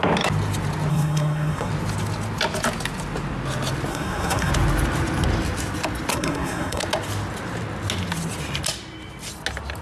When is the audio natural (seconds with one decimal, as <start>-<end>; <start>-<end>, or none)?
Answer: 0.0-0.9; 1.7-3.9; 4.5-6.1; 6.8-9.8